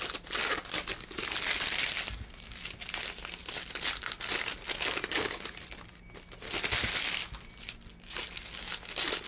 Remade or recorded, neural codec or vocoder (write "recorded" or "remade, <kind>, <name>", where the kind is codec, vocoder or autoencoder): recorded